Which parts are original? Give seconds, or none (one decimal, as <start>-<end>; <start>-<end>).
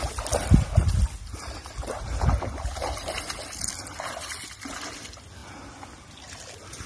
0.0-6.9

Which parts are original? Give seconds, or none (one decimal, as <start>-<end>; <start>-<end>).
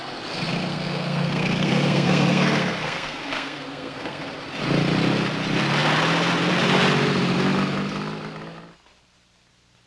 0.0-0.7; 4.2-9.9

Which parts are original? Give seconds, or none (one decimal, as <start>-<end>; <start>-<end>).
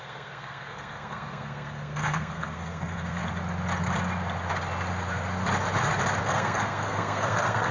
3.2-6.2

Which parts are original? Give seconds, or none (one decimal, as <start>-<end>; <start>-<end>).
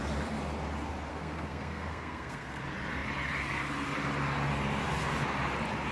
0.0-1.1; 2.6-5.9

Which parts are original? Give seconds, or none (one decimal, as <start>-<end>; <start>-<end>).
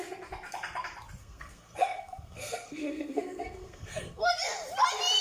0.0-1.2; 4.3-5.2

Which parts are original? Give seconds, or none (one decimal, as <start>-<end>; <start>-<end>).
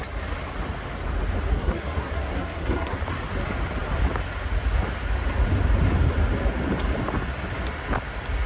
0.0-1.5; 3.0-8.5